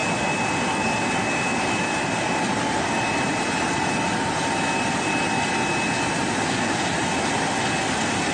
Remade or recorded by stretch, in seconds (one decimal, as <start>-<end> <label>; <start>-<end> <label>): 0.0-5.0 remade; 5.0-6.9 recorded; 6.9-7.6 remade; 7.6-8.3 recorded